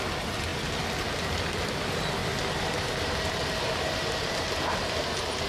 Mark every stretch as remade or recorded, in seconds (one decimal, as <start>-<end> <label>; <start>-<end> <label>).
0.0-5.5 recorded